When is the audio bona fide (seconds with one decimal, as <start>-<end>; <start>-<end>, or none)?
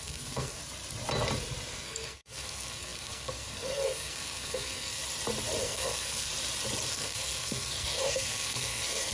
0.6-1.7; 5.0-5.6; 6.3-6.9